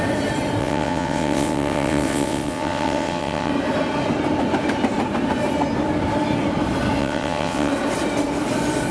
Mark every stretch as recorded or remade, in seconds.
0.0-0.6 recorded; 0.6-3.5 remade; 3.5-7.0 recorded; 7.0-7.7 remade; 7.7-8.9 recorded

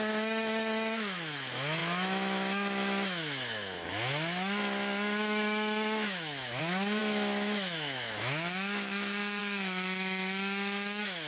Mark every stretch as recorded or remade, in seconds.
0.0-11.3 remade

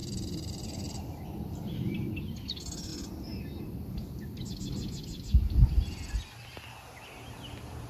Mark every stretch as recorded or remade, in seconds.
0.0-7.9 recorded